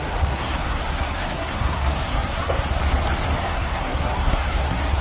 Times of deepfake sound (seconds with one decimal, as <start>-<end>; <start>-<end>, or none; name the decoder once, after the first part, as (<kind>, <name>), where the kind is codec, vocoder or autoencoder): 0.0-2.8 (codec, SNAC); 3.4-5.0